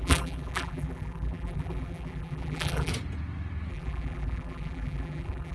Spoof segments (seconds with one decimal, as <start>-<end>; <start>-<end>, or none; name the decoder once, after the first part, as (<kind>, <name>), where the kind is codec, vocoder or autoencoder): 0.0-2.9 (vocoder, BigVGAN v2); 3.7-5.5